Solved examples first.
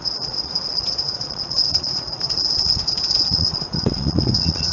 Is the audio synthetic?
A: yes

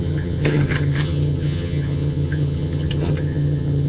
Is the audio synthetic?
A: yes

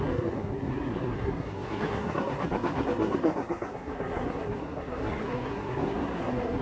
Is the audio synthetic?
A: yes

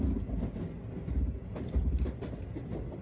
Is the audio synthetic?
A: no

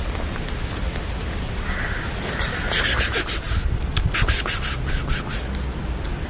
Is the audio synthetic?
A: no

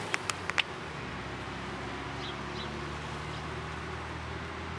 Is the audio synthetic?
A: no